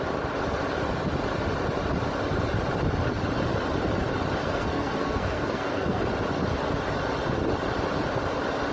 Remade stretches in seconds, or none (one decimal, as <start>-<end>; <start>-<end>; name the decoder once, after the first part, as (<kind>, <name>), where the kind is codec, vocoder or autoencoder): 4.4-6.0 (codec, SNAC)